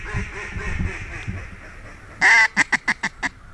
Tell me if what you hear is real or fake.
real